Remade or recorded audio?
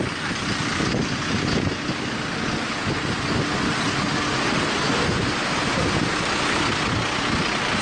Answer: recorded